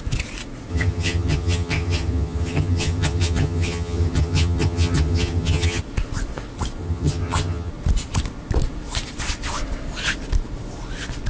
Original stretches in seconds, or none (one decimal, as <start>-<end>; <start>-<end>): 0.0-0.7; 5.8-6.8; 7.7-11.3